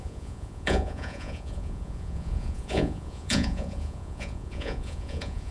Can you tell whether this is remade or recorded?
remade